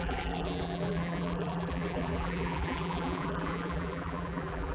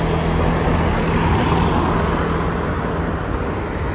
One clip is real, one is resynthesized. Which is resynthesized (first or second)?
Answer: first